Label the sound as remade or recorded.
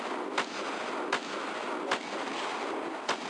recorded